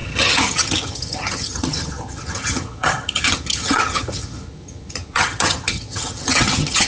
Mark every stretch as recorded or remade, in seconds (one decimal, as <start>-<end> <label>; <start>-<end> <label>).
0.0-6.9 remade